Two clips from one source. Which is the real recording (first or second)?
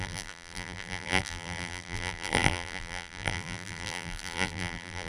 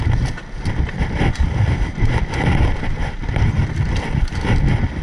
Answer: second